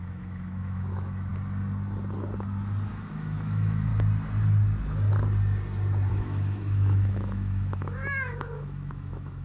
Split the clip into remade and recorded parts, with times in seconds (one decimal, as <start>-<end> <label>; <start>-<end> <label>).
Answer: 0.0-1.3 remade; 1.3-2.9 recorded; 2.9-3.9 remade; 3.9-6.1 recorded; 6.1-9.4 remade